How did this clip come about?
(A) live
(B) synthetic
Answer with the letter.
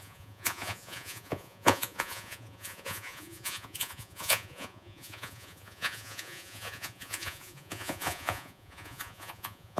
B